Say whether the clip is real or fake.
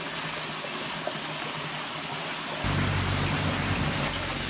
real